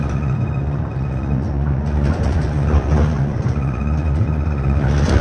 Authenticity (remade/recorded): remade